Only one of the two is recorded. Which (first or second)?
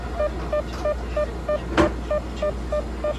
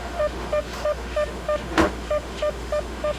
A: first